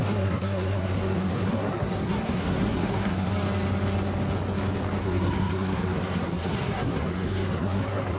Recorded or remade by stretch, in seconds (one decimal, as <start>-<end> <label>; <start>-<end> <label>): 0.0-3.3 remade; 3.3-5.0 recorded; 5.0-8.2 remade